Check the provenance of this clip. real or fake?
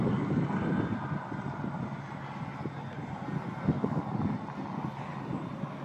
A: real